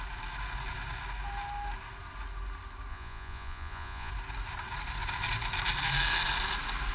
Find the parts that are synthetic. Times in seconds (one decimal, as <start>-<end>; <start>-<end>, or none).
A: 2.9-4.1